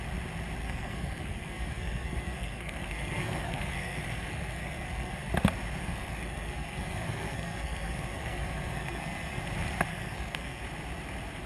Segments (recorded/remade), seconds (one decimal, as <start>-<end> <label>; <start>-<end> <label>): 0.0-0.6 recorded; 0.6-5.3 remade; 5.3-5.8 recorded; 5.8-9.4 remade; 9.4-9.9 recorded; 9.9-10.6 remade; 10.6-11.5 recorded